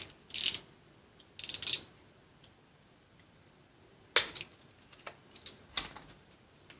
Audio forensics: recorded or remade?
recorded